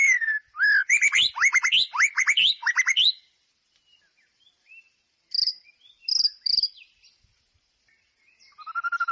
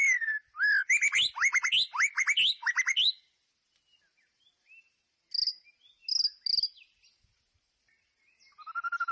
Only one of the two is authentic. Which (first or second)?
second